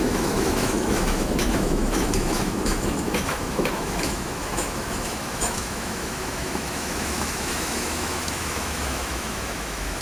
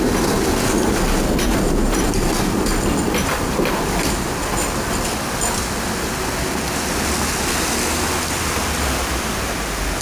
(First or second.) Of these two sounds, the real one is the second